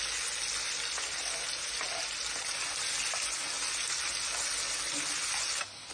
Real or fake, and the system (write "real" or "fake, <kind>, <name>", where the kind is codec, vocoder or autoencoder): real